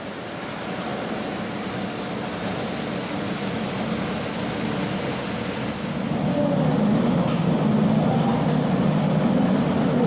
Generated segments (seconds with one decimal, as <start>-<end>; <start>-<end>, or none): none